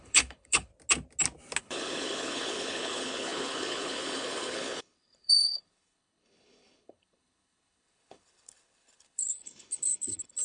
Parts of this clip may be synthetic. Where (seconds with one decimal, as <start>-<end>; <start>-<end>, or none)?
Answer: 0.0-0.7; 1.6-10.4